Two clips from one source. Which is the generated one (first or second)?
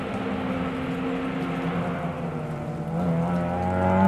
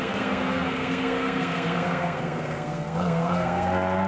second